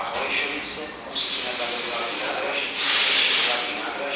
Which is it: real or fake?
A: real